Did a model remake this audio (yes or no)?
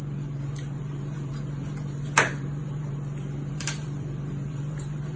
yes